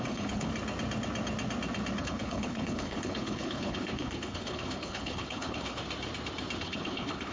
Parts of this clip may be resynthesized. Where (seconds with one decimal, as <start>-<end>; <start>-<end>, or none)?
0.0-0.5; 2.0-5.8; 6.6-7.3